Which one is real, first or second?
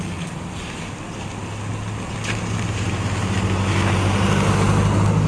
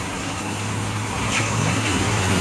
first